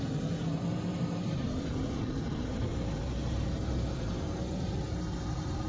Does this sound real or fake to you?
real